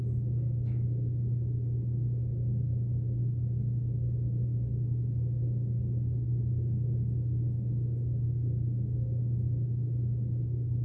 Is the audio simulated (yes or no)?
no